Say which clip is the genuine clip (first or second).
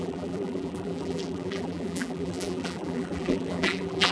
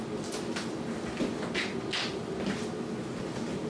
second